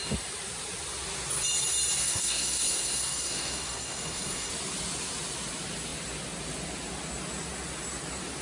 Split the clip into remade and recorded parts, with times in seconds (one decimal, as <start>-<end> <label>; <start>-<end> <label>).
0.0-2.0 recorded; 2.0-4.5 remade; 4.5-8.4 recorded

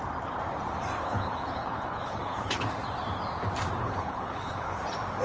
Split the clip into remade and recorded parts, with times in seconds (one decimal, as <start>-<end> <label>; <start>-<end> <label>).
0.0-1.0 recorded; 1.0-2.7 remade; 2.7-3.8 recorded; 3.8-4.8 remade; 4.8-5.2 recorded

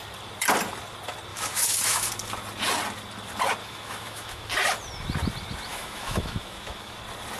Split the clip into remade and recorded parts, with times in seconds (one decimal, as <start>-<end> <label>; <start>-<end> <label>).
0.0-1.3 recorded; 1.3-2.1 remade; 2.1-3.6 recorded; 3.6-4.5 remade; 4.5-5.7 recorded; 5.7-7.0 remade; 7.0-7.4 recorded

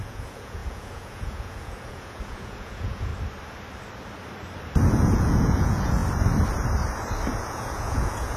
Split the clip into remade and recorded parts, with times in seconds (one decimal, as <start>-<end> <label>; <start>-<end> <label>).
0.0-3.1 remade; 3.1-5.0 recorded; 5.0-6.0 remade; 6.0-7.4 recorded; 7.4-8.4 remade